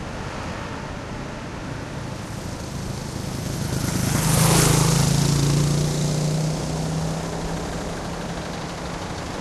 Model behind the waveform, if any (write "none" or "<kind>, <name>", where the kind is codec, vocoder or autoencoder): none